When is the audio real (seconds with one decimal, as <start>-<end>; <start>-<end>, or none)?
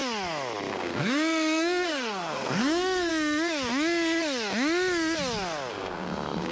0.0-0.7; 3.1-5.7